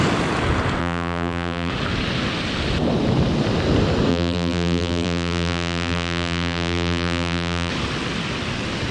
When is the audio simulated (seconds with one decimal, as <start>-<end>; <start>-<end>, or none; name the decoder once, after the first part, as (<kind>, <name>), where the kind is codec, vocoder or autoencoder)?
0.8-1.7 (vocoder, BigVGAN v2); 4.1-7.7